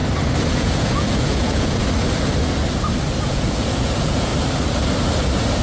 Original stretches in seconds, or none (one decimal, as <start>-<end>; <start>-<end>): 0.0-0.5; 1.8-3.3; 4.3-5.6